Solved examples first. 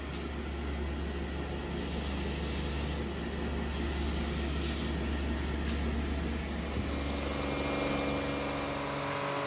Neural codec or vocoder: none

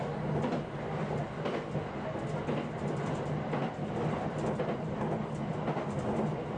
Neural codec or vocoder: none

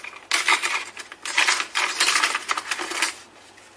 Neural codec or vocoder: none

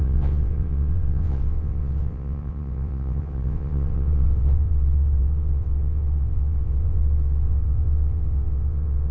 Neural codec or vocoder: vocoder, WaveNeXt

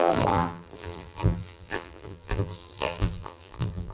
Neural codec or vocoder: vocoder, BigVGAN v2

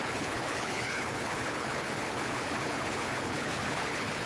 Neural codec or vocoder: codec, HILCodec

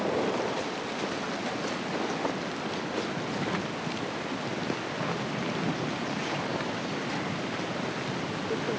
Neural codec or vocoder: none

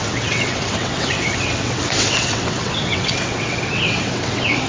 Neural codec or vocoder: vocoder, WaveNeXt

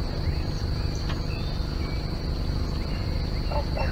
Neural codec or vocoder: none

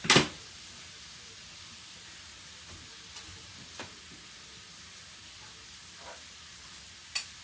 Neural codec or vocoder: none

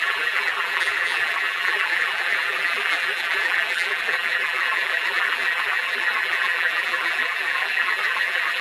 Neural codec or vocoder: vocoder, BigVGAN v2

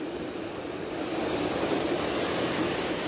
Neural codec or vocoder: none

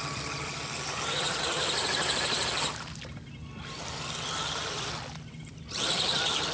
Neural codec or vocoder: none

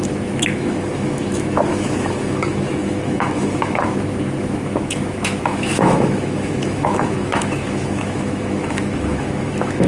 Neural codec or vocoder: autoencoder, DAC-VAE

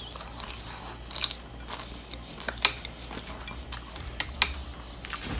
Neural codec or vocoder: none